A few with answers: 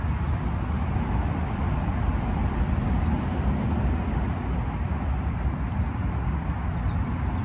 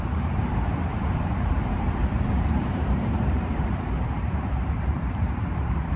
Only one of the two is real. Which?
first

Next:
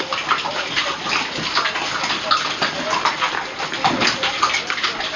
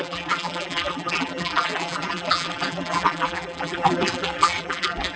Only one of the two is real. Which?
first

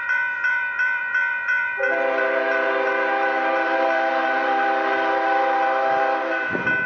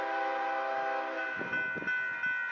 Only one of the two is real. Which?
second